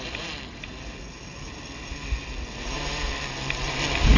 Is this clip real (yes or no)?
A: yes